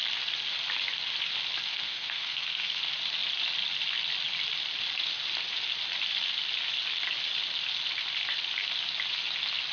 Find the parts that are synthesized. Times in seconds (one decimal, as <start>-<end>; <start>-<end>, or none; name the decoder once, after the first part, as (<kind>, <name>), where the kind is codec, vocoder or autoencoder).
1.7-2.8 (codec, SNAC)